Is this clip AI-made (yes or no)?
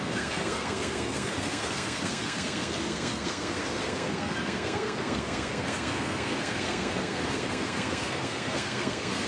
yes